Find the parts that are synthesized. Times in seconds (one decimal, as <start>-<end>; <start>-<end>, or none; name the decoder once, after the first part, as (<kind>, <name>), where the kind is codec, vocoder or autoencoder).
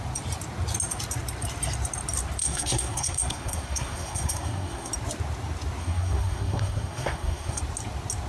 2.4-4.9 (codec, SNAC); 5.8-7.6